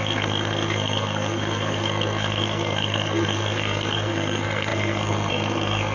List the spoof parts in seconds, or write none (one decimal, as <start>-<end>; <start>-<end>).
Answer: 0.0-5.9